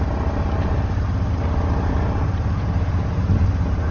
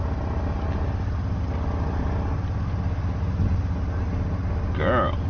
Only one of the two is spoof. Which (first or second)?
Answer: first